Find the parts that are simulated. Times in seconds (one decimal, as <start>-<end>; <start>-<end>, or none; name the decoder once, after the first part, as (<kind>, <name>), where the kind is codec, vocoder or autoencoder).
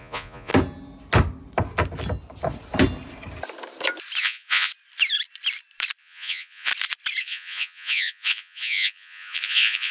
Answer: 0.0-0.5 (vocoder, Vocos); 4.2-4.7; 6.0-6.7; 7.2-9.9